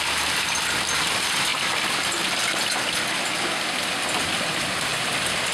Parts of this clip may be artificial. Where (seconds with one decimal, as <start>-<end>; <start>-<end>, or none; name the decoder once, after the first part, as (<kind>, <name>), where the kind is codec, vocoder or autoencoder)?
0.0-1.5 (vocoder, BigVGAN v2); 4.2-4.9